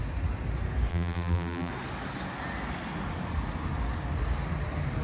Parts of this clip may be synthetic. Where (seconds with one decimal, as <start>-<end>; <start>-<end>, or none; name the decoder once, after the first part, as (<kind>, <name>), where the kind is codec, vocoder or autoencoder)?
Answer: 0.9-1.7 (vocoder, BigVGAN v2)